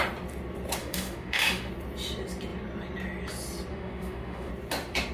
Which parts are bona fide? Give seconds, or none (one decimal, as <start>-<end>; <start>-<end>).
0.0-0.8; 1.7-3.7; 4.5-5.1